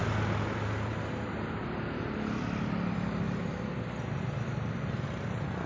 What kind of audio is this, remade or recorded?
recorded